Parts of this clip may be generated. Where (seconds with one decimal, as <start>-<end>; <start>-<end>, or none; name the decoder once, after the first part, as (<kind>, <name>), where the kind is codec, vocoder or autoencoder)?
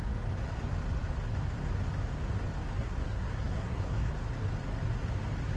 2.8-4.1 (codec, SNAC)